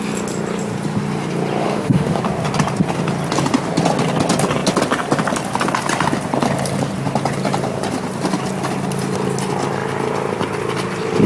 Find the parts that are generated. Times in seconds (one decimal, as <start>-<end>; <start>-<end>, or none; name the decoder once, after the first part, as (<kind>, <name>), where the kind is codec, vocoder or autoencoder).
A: 1.6-2.2 (autoencoder, DAC-VAE)